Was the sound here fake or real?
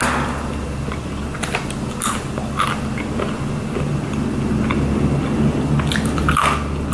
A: real